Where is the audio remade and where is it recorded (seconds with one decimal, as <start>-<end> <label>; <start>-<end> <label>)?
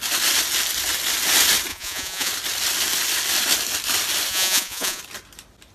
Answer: 0.0-1.7 recorded; 1.7-2.3 remade; 2.3-4.3 recorded; 4.3-5.0 remade; 5.0-5.7 recorded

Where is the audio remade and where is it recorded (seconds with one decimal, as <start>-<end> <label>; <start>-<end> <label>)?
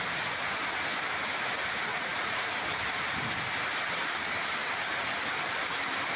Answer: 0.0-1.9 recorded; 1.9-2.5 remade; 2.5-6.2 recorded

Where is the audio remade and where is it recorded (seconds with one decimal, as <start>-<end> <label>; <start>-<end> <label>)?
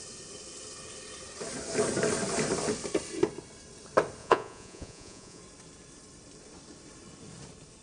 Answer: 0.0-4.2 recorded; 4.2-5.4 remade; 5.4-7.8 recorded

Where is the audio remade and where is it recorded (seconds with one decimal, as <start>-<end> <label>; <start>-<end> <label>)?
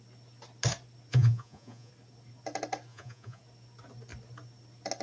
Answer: 0.0-1.1 recorded; 1.1-1.9 remade; 1.9-2.9 recorded; 2.9-3.4 remade; 3.4-5.0 recorded